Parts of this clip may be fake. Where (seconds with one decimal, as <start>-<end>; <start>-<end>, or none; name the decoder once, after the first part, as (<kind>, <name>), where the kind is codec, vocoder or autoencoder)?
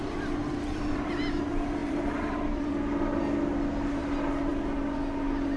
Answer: 0.4-1.2 (vocoder, BigVGAN v2); 1.8-2.7